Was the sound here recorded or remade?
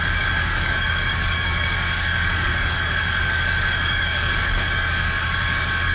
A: remade